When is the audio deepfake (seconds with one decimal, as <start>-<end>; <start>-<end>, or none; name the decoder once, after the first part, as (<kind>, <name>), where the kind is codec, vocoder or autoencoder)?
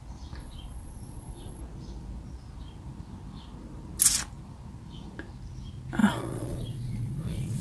0.4-1.6 (vocoder, Vocos); 6.0-7.6